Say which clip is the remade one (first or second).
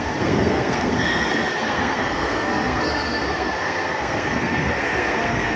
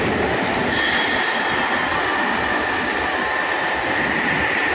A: first